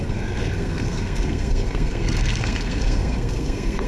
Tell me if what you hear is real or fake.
fake